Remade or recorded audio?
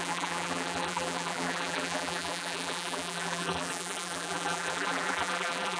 remade